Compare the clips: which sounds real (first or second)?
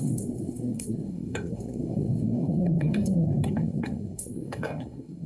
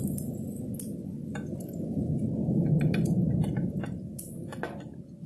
second